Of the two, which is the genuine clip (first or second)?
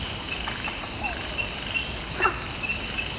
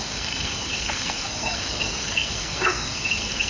first